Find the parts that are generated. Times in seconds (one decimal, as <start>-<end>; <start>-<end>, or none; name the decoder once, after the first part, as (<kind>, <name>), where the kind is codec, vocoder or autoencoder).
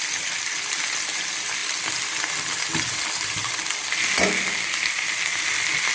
none